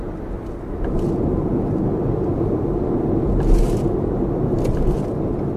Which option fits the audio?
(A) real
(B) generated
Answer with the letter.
A